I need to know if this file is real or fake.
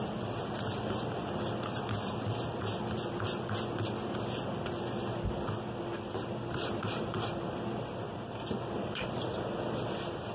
fake